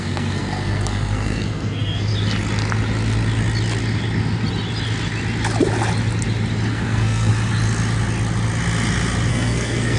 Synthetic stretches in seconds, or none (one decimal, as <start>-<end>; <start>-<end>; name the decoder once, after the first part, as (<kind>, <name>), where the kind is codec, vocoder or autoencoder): 0.0-2.1 (codec, SNAC); 6.7-7.3; 9.3-10.0